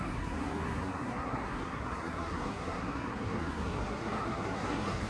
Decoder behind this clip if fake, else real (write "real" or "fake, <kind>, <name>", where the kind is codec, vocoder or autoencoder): fake, codec, SNAC